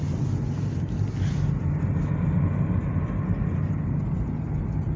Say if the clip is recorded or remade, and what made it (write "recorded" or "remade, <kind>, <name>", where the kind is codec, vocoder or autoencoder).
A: recorded